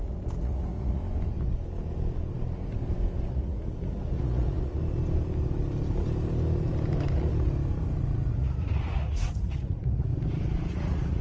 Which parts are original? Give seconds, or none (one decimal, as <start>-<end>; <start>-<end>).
1.0-3.3; 4.8-8.3; 10.1-10.7